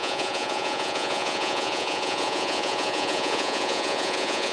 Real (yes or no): no